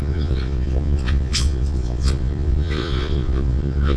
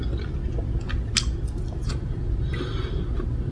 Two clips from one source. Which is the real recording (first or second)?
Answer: second